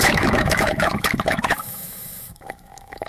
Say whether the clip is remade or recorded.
remade